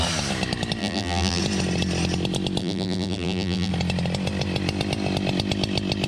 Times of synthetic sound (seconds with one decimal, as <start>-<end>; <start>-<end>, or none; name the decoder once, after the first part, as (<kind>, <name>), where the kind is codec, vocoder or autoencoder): 0.8-1.4 (vocoder, BigVGAN v2); 2.6-3.7